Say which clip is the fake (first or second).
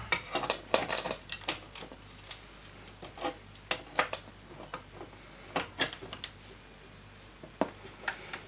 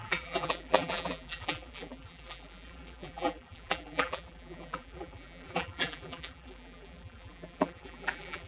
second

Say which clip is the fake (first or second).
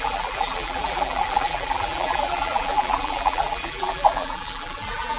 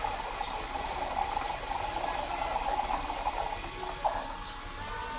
first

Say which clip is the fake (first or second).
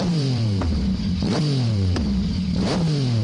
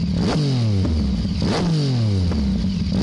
first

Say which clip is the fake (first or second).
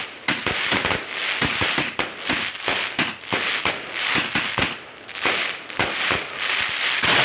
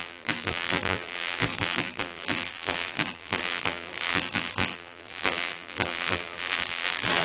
second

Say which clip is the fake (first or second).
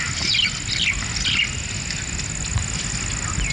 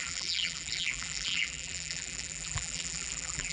second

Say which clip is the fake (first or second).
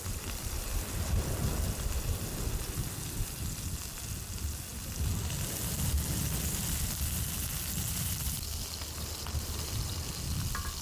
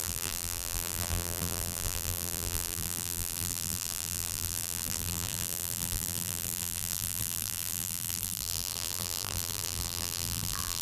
second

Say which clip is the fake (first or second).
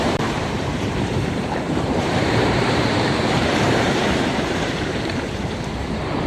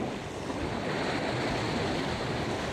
first